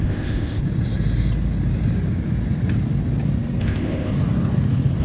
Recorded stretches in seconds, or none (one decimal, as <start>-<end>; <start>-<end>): 0.6-3.6; 4.1-5.0